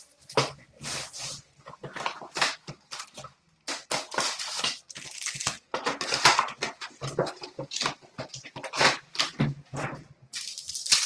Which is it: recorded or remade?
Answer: recorded